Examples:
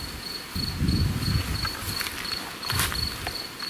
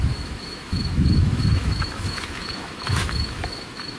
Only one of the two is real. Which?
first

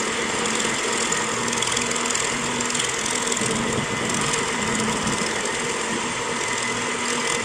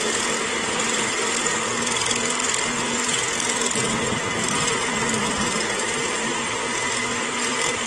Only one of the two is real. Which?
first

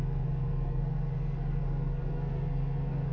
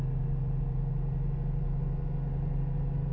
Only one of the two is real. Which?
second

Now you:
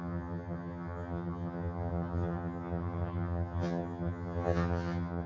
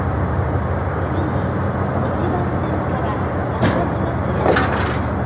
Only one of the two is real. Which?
second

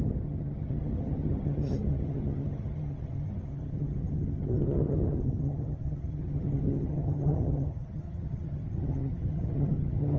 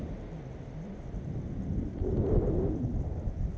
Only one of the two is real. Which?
second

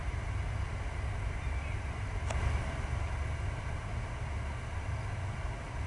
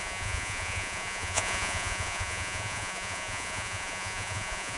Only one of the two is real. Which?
first